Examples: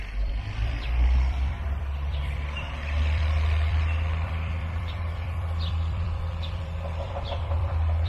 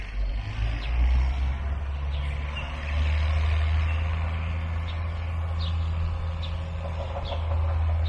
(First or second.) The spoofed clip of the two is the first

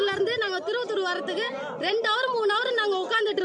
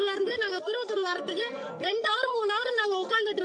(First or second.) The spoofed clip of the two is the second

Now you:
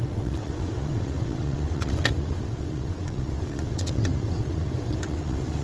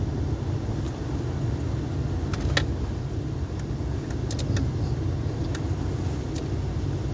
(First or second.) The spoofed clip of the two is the first